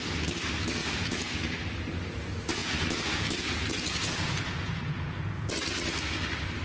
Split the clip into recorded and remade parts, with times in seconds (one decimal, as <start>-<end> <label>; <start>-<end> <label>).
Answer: 0.0-0.8 recorded; 0.8-1.4 remade; 1.4-2.6 recorded; 2.6-5.5 remade; 5.5-6.6 recorded